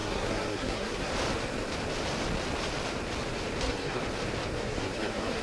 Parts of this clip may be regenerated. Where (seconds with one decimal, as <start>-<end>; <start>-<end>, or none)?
0.0-1.1; 3.6-4.0; 4.6-5.4